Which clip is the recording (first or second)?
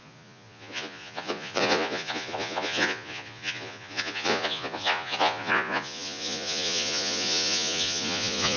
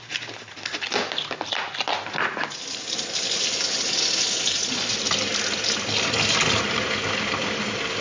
second